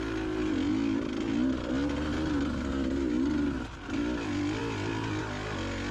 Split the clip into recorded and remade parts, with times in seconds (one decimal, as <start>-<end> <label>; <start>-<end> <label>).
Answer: 0.0-5.9 recorded